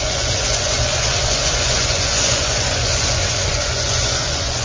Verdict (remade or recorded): remade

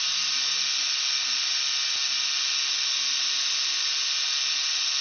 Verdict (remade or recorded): recorded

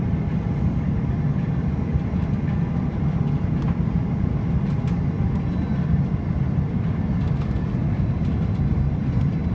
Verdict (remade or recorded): recorded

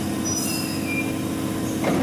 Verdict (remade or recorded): recorded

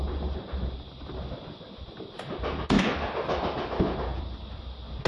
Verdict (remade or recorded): recorded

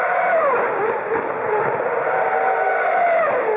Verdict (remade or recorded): recorded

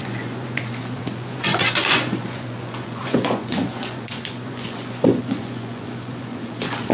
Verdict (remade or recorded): remade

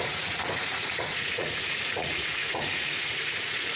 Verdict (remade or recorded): remade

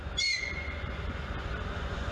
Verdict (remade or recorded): remade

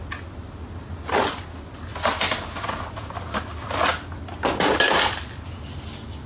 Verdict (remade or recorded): recorded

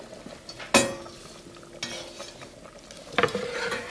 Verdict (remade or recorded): recorded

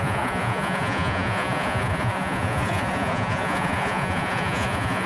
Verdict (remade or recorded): remade